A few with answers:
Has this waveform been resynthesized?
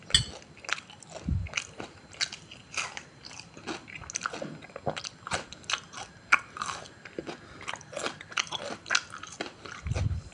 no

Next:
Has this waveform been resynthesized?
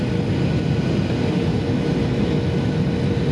no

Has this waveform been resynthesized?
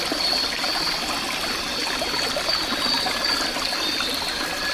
no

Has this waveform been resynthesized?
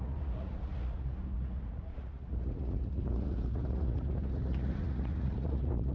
yes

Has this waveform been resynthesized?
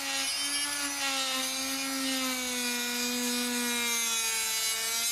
no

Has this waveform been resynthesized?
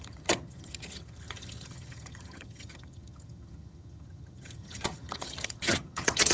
yes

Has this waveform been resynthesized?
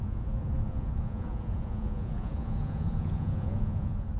yes